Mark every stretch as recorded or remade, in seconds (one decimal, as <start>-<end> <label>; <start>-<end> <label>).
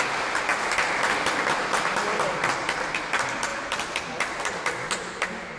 0.0-5.6 recorded